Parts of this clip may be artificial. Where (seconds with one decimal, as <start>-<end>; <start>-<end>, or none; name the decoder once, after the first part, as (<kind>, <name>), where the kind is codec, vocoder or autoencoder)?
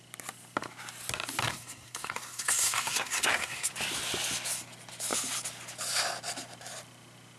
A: 1.4-3.7 (codec, SNAC)